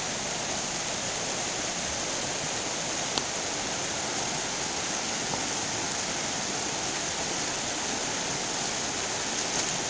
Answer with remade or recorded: recorded